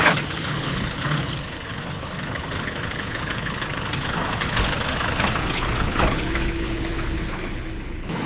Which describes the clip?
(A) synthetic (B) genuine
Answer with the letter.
A